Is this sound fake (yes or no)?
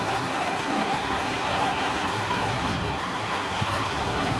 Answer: yes